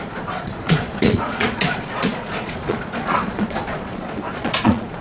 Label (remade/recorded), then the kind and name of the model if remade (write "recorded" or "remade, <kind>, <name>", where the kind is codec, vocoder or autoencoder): remade, vocoder, Vocos